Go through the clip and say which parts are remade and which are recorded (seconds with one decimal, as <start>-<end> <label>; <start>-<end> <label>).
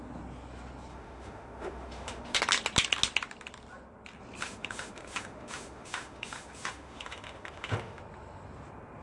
0.0-0.9 recorded; 0.9-2.4 remade; 2.4-4.4 recorded; 4.4-8.0 remade; 8.0-9.0 recorded